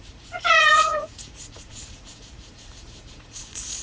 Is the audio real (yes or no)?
no